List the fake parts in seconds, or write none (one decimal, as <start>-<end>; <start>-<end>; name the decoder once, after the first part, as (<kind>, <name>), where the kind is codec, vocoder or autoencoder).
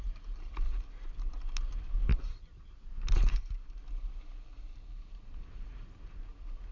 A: 0.0-6.7 (vocoder, BigVGAN v2)